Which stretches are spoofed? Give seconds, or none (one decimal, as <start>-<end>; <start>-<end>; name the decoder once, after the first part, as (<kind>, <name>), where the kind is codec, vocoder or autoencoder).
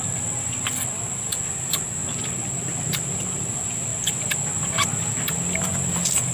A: none